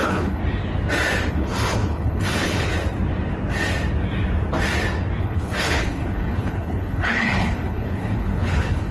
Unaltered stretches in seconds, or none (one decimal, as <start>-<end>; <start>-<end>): 0.4-1.3; 2.7-5.2